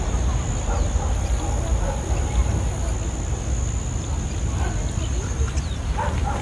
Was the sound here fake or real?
real